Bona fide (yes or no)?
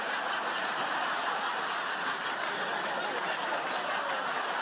yes